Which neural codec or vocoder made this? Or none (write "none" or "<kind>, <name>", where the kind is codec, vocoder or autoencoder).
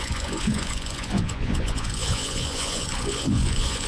vocoder, Vocos